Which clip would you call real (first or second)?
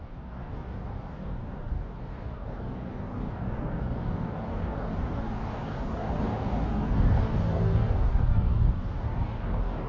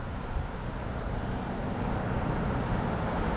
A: second